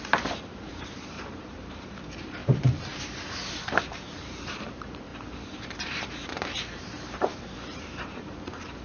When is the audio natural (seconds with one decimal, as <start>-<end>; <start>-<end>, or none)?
5.1-5.7